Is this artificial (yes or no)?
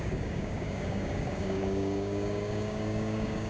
yes